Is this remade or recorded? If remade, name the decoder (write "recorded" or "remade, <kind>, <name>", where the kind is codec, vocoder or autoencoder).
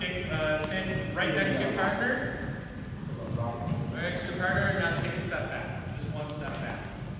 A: recorded